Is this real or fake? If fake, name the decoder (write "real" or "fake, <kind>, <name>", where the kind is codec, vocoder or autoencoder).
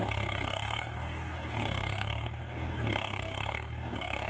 fake, codec, DAC